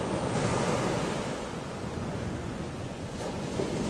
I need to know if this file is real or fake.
fake